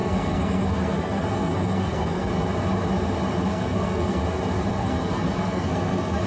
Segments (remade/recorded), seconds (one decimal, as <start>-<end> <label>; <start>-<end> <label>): 0.0-2.3 remade; 2.3-3.5 recorded; 3.5-4.2 remade; 4.2-4.7 recorded; 4.7-6.3 remade